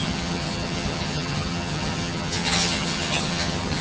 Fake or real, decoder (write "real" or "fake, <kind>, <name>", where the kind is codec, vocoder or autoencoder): fake, vocoder, HiFi-GAN